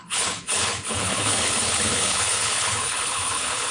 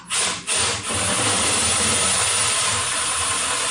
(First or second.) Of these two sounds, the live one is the second